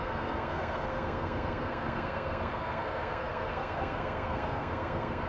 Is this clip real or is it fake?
fake